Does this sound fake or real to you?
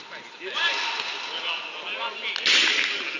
real